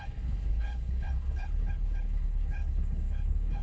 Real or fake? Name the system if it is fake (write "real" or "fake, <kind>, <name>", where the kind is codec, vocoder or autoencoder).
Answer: fake, codec, HILCodec